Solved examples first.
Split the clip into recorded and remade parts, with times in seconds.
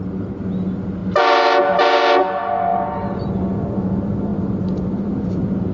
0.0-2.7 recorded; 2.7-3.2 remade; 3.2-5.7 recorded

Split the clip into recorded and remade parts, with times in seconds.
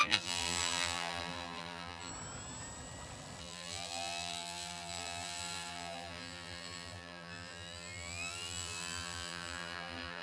0.0-2.1 remade; 2.1-3.4 recorded; 3.4-10.2 remade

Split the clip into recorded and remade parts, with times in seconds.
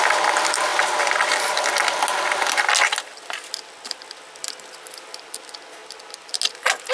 0.0-6.9 recorded